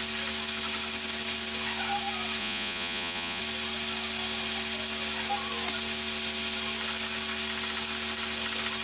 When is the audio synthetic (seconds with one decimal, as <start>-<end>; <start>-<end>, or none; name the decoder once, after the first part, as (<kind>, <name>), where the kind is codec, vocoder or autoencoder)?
2.4-3.4 (vocoder, Vocos)